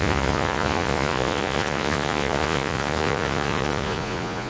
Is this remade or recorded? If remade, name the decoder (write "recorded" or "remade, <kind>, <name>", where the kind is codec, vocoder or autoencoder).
remade, vocoder, Vocos